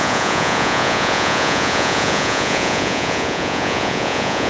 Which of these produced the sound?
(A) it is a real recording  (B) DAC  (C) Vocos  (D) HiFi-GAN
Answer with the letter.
C